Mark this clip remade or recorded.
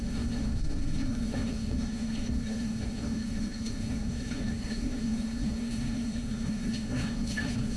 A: remade